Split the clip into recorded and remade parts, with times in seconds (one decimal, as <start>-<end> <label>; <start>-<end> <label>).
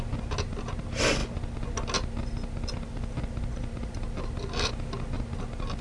0.0-5.8 recorded